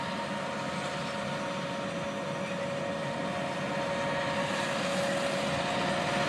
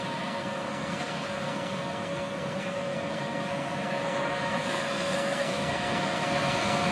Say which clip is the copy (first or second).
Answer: second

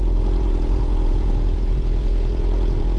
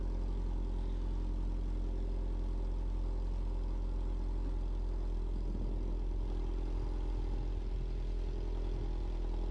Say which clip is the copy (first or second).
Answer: first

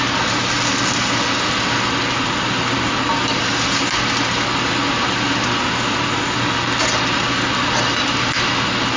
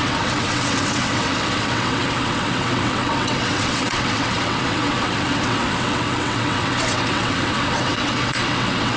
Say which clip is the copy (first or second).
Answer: second